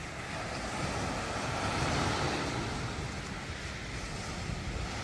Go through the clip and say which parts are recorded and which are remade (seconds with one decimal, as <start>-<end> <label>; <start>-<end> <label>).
0.0-5.0 recorded